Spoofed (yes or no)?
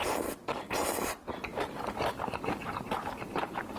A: yes